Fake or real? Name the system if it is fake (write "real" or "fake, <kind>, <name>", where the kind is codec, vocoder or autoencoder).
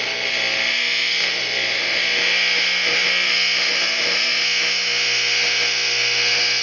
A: fake, autoencoder, DAC-VAE